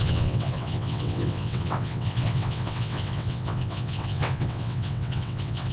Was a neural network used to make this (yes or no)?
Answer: yes